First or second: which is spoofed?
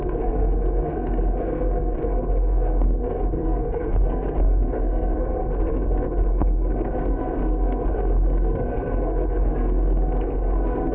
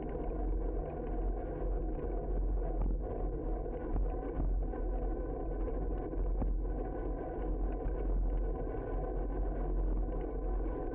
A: first